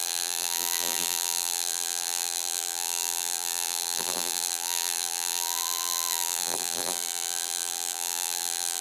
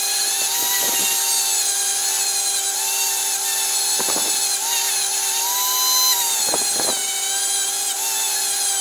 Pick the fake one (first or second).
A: first